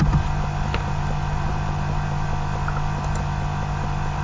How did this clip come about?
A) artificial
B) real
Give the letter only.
B